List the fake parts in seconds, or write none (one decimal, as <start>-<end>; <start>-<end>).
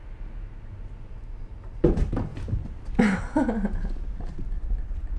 none